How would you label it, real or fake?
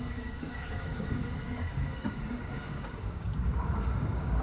fake